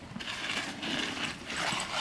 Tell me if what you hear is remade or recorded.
recorded